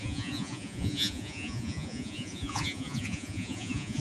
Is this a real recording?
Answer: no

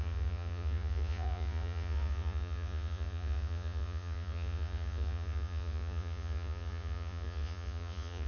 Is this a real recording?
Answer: no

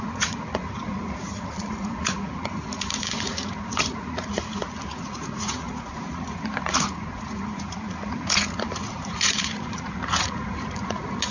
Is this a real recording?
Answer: no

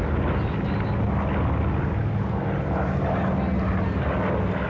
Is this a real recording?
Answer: yes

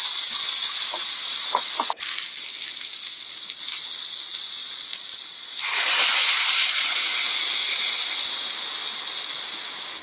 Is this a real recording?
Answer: yes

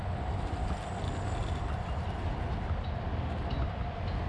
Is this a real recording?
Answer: yes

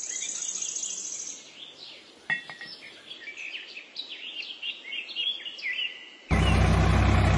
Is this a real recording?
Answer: yes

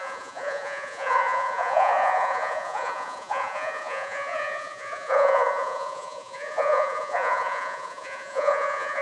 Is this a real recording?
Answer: no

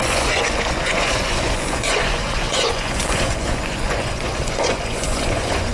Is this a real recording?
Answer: no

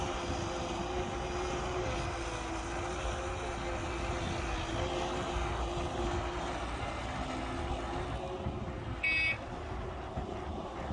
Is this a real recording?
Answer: yes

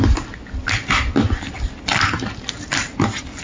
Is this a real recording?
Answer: yes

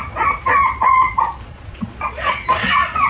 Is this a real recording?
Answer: no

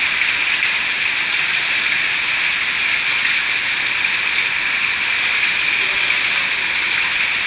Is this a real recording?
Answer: yes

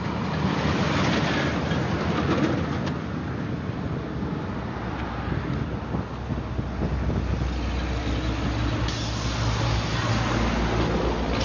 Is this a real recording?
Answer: yes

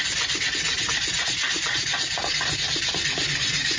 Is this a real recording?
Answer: yes